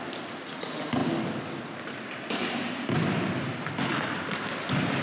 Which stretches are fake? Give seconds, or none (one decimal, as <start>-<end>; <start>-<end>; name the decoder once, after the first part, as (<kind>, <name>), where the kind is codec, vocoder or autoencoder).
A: none